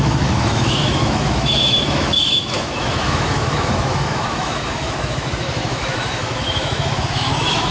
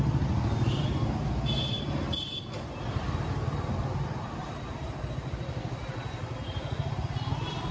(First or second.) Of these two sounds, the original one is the second